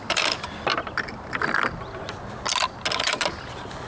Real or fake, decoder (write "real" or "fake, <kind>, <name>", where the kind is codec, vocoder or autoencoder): real